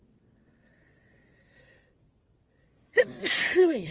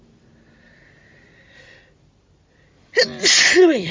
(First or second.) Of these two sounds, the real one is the second